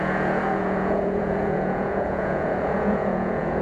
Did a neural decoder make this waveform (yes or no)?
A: yes